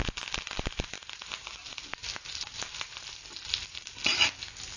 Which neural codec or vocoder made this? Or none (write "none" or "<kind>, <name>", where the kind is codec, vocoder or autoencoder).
none